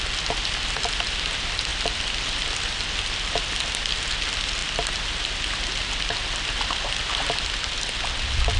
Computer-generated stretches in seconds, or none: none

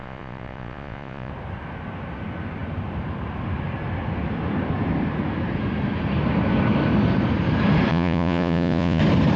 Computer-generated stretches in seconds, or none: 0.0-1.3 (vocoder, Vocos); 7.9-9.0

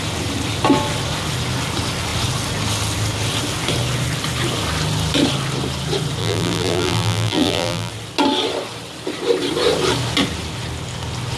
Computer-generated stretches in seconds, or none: 6.2-7.9 (vocoder, BigVGAN v2)

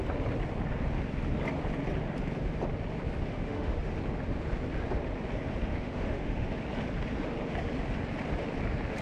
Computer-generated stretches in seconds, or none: 3.3-3.9 (autoencoder, DAC-VAE); 5.7-6.5

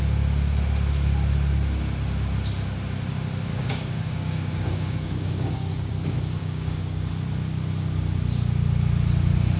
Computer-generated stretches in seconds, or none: 3.5-5.9 (codec, DAC); 6.4-7.1